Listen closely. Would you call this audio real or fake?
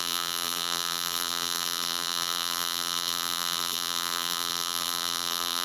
fake